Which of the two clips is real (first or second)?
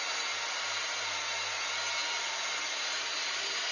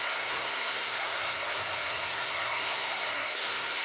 first